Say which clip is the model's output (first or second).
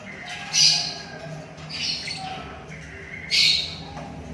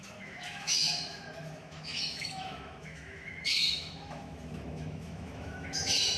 second